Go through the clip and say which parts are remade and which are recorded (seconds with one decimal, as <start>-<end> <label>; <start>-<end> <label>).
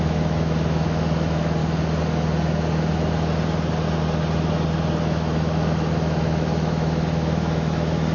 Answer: 0.0-1.6 remade; 1.6-5.0 recorded; 5.0-8.1 remade